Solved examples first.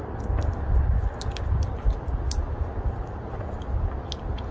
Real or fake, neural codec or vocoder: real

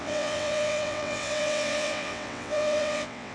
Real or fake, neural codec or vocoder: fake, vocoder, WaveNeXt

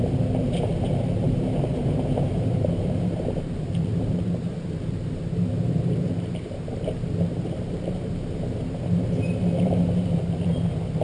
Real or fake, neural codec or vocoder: fake, vocoder, BigVGAN v2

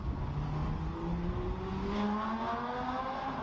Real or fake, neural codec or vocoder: real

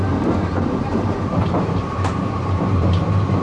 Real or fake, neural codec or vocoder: fake, vocoder, BigVGAN v2